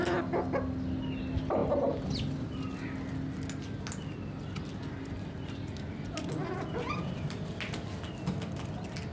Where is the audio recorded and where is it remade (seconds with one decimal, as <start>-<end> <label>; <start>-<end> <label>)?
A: 0.0-6.4 recorded; 6.4-7.6 remade; 7.6-9.1 recorded